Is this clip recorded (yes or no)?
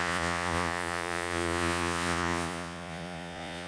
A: no